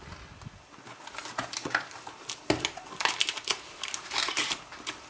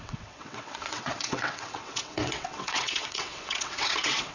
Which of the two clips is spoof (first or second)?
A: second